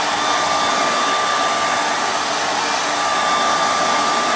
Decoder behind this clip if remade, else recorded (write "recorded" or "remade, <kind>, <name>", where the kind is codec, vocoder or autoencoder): recorded